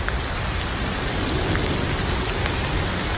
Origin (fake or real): real